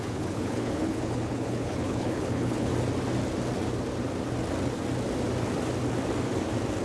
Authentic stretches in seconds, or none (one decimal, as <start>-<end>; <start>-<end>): 2.7-6.8